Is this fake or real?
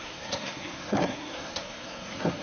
fake